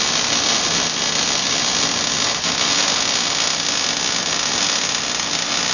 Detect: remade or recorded recorded